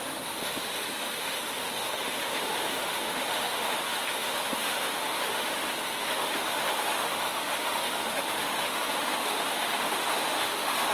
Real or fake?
fake